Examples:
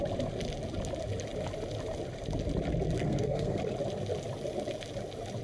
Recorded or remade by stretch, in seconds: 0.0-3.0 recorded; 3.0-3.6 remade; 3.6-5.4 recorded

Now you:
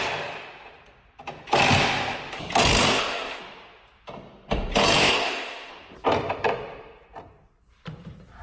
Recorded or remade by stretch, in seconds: 0.0-2.9 recorded; 2.9-3.4 remade; 3.4-5.0 recorded; 5.0-5.7 remade; 5.7-8.4 recorded

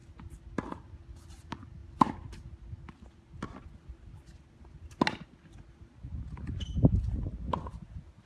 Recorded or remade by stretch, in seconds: 0.0-8.3 recorded

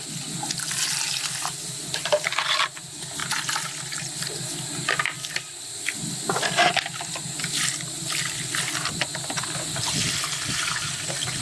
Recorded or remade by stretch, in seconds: 0.0-11.4 recorded

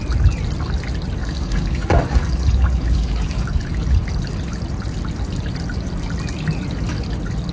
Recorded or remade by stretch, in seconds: 0.0-1.2 recorded; 1.2-3.6 remade; 3.6-7.5 recorded

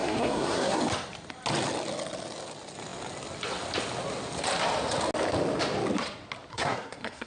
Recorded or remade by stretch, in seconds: 0.0-0.8 remade; 0.8-6.5 recorded; 6.5-7.3 remade